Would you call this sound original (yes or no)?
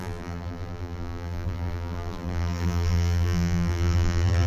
no